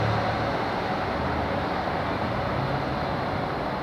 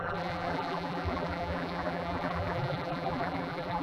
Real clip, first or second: first